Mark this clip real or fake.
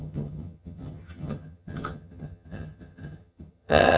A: fake